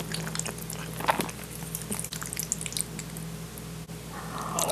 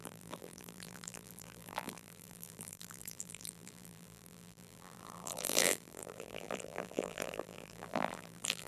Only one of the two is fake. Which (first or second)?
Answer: second